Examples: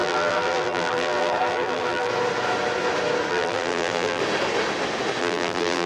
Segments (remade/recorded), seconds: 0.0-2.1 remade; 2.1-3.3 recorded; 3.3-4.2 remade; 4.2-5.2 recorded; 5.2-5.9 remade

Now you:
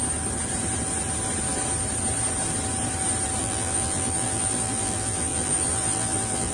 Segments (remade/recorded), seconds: 0.0-3.4 recorded; 3.4-6.5 remade

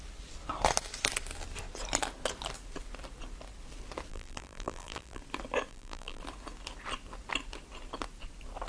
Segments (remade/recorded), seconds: 0.0-4.1 recorded; 4.1-5.2 remade; 5.2-5.7 recorded; 5.7-6.2 remade; 6.2-8.7 recorded

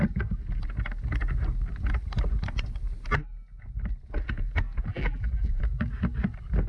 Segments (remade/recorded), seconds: 0.0-4.9 recorded; 4.9-5.6 remade; 5.6-6.7 recorded

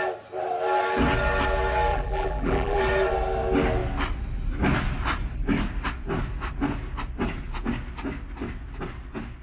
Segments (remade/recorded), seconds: 0.0-1.9 recorded; 1.9-2.8 remade; 2.8-9.4 recorded

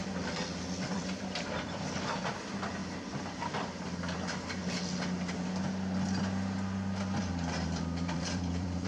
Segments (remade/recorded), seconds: 0.0-0.9 recorded; 0.9-2.8 remade; 2.8-3.8 recorded; 3.8-4.6 remade; 4.6-7.2 recorded; 7.2-8.9 remade